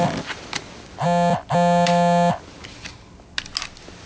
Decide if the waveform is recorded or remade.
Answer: recorded